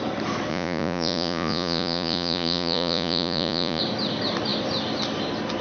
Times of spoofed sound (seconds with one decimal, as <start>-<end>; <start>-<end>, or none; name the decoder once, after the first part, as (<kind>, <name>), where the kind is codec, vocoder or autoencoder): 0.5-3.8 (vocoder, Vocos)